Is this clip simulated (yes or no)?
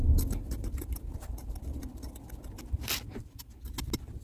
no